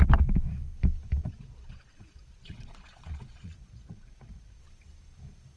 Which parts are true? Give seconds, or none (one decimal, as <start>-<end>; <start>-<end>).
0.0-1.2; 4.6-5.6